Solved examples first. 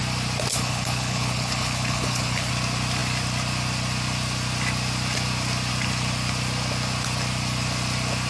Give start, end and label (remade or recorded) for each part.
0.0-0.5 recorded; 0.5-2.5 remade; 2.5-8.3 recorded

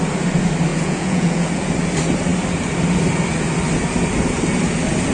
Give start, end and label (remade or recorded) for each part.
0.0-0.7 recorded; 0.7-1.7 remade; 1.7-5.1 recorded

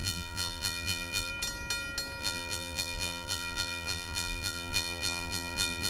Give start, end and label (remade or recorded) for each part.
0.0-1.3 remade; 1.3-2.2 recorded; 2.2-5.9 remade

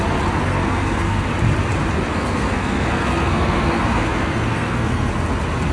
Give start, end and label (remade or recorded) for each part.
0.0-0.5 recorded; 0.5-1.3 remade; 1.3-2.1 recorded; 2.1-5.1 remade; 5.1-5.7 recorded

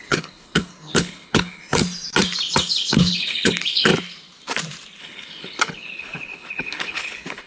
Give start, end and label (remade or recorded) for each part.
0.0-1.8 remade; 1.8-2.6 recorded; 2.6-3.9 remade; 3.9-5.0 recorded; 5.0-7.5 remade

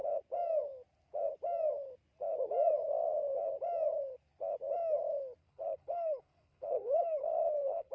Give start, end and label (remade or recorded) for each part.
0.0-5.4 recorded; 5.4-7.9 remade

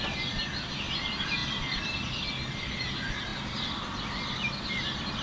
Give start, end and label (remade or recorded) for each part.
0.0-5.2 recorded

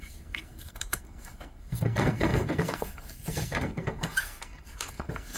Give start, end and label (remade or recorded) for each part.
0.0-5.4 remade